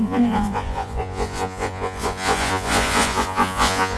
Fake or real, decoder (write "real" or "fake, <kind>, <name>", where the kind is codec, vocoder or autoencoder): fake, vocoder, Vocos